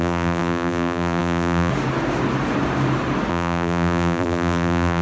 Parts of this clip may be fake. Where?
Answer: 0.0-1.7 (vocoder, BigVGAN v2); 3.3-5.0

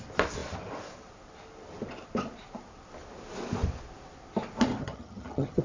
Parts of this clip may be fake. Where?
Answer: 4.7-5.6 (vocoder, HiFi-GAN)

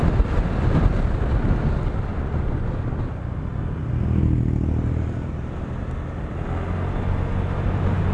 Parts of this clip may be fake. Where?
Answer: 2.1-2.7 (vocoder, Vocos)